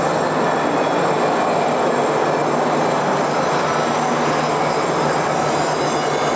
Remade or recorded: recorded